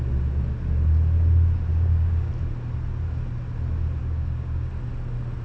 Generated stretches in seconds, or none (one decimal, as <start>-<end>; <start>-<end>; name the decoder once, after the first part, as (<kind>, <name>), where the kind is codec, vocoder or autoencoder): 1.7-2.3 (codec, DAC); 4.0-4.7